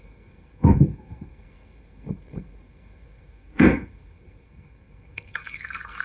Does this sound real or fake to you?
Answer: fake